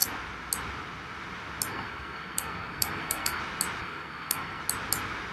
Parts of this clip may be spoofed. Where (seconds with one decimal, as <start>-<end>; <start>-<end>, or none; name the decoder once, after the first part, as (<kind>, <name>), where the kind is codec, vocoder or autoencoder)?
1.7-3.4 (codec, SNAC); 3.8-4.6